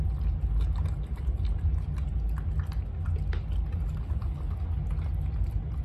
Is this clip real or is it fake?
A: real